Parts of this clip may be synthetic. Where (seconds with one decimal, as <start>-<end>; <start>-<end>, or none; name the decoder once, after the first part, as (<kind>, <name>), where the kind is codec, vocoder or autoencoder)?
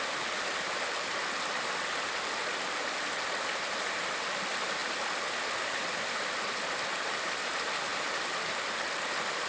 7.9-8.7 (vocoder, BigVGAN v2)